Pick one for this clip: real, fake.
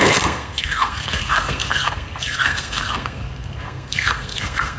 fake